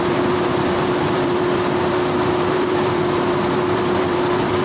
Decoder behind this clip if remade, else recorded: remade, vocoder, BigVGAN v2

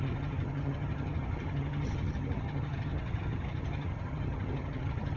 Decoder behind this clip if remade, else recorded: remade, vocoder, HiFi-GAN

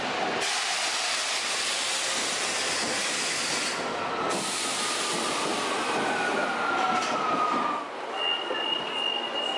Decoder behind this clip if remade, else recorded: recorded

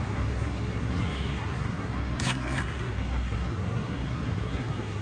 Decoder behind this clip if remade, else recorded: remade, codec, SNAC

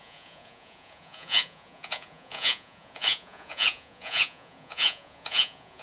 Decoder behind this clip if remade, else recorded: remade, vocoder, Vocos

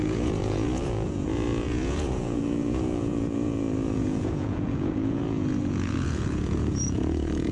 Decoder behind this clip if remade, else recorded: remade, vocoder, Vocos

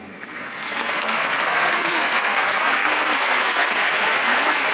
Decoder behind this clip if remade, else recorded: remade, codec, SNAC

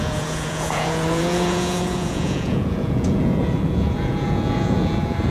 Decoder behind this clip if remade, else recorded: remade, vocoder, Vocos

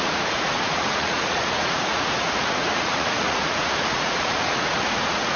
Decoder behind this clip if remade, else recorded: remade, vocoder, Vocos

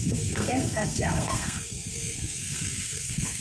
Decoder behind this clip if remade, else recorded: remade, codec, SNAC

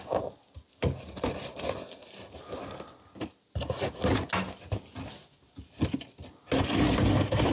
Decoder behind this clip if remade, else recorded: recorded